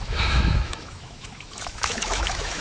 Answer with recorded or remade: remade